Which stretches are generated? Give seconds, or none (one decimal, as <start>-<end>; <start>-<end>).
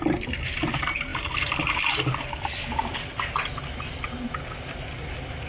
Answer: none